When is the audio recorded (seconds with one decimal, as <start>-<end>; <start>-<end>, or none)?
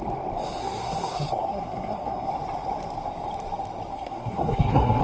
0.0-0.6; 2.3-3.9